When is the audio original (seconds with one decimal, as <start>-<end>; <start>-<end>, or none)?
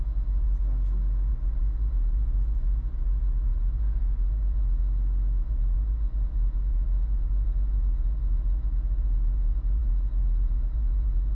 0.6-1.3; 4.8-5.4